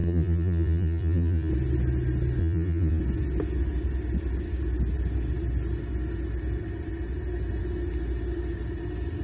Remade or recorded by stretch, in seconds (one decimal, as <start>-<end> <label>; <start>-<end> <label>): 0.0-1.5 remade; 1.5-2.4 recorded; 2.4-3.0 remade; 3.0-9.2 recorded